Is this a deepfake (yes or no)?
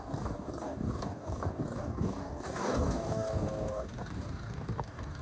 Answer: yes